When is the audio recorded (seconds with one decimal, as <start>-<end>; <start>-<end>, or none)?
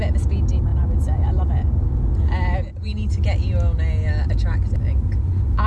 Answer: 0.0-5.7